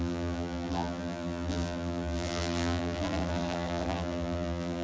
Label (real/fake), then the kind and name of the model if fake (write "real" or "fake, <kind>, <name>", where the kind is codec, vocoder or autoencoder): fake, vocoder, BigVGAN v2